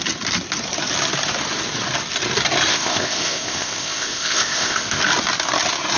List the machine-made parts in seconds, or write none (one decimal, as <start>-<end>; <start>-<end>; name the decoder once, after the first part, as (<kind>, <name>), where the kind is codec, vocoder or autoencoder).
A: 2.7-5.0 (codec, ZipCodec)